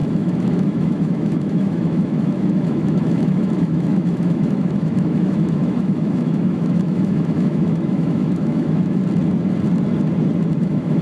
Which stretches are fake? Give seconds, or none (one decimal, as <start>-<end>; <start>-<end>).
0.0-9.0; 10.6-11.0